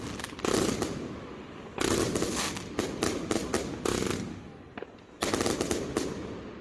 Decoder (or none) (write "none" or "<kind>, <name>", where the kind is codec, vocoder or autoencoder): none